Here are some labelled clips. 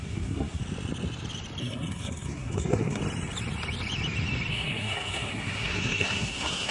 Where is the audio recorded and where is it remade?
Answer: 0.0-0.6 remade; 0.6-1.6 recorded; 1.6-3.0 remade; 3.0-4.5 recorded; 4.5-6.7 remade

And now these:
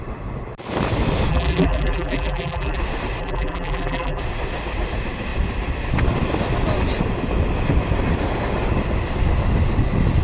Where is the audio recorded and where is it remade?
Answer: 0.0-1.3 recorded; 1.3-2.8 remade; 2.8-3.2 recorded; 3.2-4.2 remade; 4.2-10.2 recorded

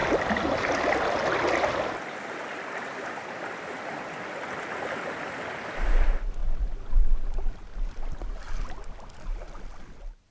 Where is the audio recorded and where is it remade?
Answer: 0.0-10.3 recorded

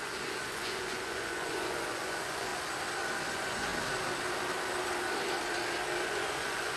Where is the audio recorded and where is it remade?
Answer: 0.0-2.5 remade; 2.5-3.3 recorded; 3.3-3.7 remade; 3.7-6.0 recorded; 6.0-6.8 remade

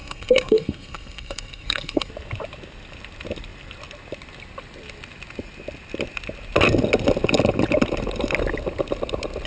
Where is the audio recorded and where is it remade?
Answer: 0.0-2.1 remade; 2.1-9.5 recorded

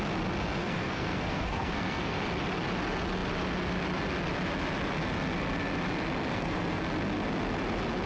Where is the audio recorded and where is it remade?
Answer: 0.0-0.6 recorded; 0.6-2.2 remade; 2.2-6.3 recorded; 6.3-6.8 remade; 6.8-8.1 recorded